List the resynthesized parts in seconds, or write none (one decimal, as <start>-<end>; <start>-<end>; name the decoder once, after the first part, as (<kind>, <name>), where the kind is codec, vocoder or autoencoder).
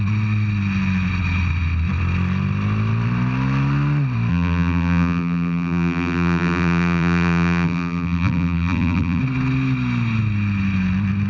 4.3-9.2 (vocoder, BigVGAN v2)